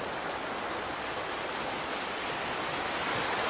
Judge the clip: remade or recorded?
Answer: recorded